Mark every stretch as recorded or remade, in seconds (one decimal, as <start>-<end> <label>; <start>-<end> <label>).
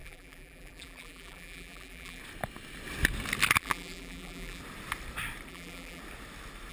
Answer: 0.0-2.2 remade; 2.2-3.6 recorded; 3.6-4.6 remade; 4.6-5.5 recorded; 5.5-6.0 remade; 6.0-6.7 recorded